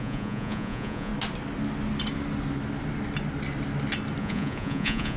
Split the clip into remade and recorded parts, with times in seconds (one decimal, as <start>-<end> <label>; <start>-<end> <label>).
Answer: 0.0-1.1 remade; 1.1-4.2 recorded; 4.2-5.2 remade

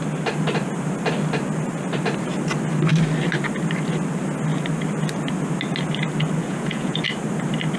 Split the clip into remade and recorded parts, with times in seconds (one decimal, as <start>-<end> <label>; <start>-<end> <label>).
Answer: 0.0-6.4 recorded; 6.4-7.0 remade; 7.0-7.8 recorded

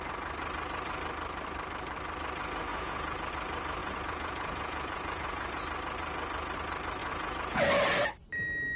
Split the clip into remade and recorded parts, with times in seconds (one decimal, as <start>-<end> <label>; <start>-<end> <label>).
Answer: 0.0-2.7 recorded; 2.7-3.3 remade; 3.3-3.8 recorded; 3.8-5.6 remade; 5.6-7.0 recorded; 7.0-7.7 remade; 7.7-8.8 recorded

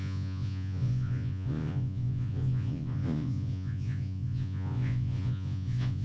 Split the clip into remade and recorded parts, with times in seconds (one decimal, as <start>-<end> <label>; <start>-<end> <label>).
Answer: 0.0-6.0 remade

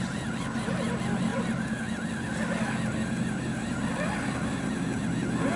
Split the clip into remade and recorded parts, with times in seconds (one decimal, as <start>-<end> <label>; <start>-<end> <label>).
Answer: 0.0-5.6 recorded

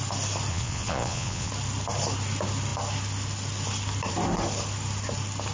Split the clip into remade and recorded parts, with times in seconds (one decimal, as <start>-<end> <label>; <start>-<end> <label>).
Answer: 0.0-0.5 recorded; 0.5-1.5 remade; 1.5-5.5 recorded